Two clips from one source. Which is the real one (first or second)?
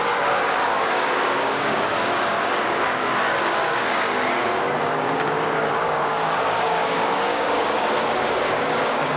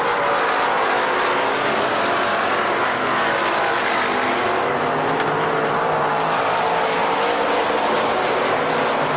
second